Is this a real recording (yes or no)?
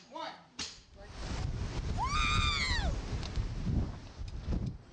yes